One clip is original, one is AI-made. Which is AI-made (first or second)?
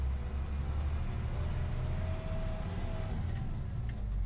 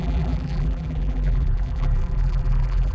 second